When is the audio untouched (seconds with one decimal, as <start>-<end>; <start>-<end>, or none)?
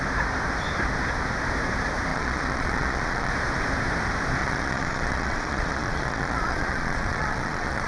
0.0-2.1; 3.3-4.4